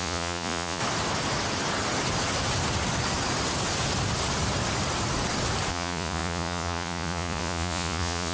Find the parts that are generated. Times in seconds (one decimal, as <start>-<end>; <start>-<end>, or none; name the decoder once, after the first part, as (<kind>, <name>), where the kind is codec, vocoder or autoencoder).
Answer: 0.0-0.8 (vocoder, Vocos); 5.7-8.3